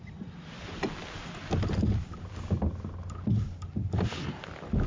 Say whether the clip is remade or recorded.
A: recorded